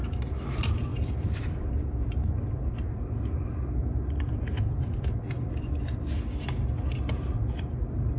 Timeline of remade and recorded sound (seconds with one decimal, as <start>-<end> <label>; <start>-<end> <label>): 0.0-0.9 recorded; 0.9-5.8 remade; 5.8-8.2 recorded